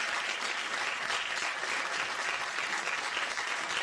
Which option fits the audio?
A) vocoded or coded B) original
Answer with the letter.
B